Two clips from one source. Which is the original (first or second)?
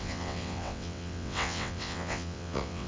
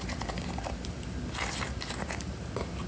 second